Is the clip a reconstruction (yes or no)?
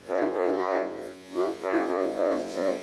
yes